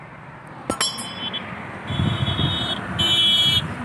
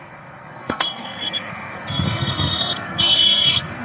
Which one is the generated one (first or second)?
second